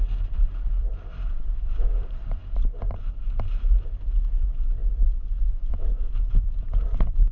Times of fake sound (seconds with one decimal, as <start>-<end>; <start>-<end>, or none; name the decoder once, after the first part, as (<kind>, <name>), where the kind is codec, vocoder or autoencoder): 0.0-7.3 (vocoder, BigVGAN v2)